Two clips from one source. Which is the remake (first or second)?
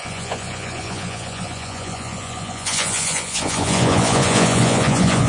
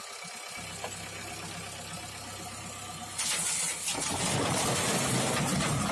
first